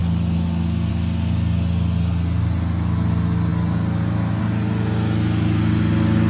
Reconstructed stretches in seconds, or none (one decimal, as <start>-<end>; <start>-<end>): none